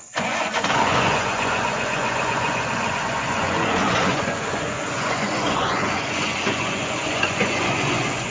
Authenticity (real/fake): fake